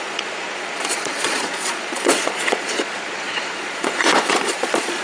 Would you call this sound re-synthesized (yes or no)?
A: yes